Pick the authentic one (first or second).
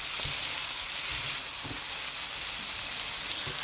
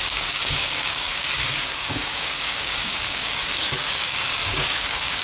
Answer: first